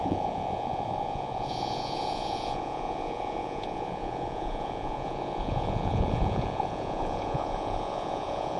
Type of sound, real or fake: fake